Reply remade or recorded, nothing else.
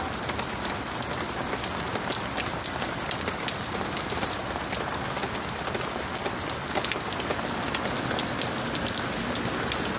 recorded